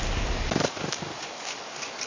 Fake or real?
fake